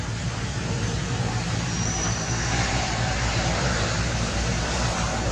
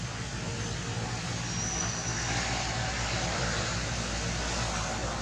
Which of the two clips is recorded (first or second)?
second